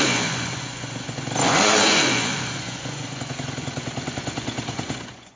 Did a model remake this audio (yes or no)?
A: yes